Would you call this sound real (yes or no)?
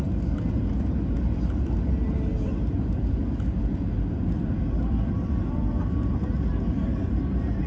yes